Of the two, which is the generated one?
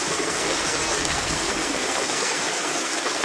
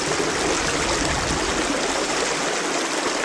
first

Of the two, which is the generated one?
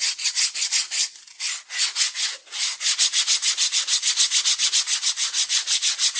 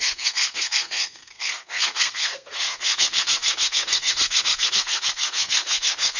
second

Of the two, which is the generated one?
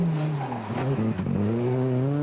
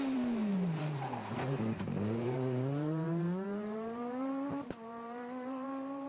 second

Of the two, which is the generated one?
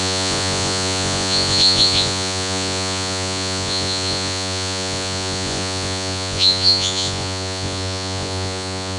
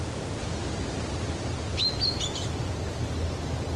first